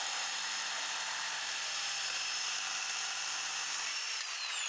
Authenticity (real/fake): fake